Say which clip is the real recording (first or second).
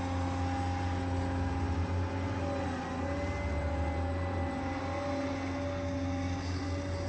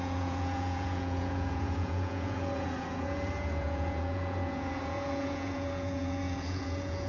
first